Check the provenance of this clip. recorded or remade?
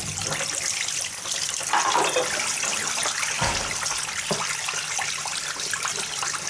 recorded